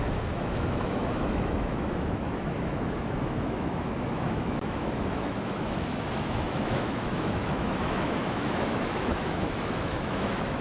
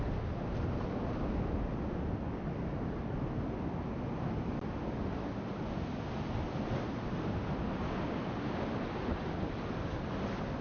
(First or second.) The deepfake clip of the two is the first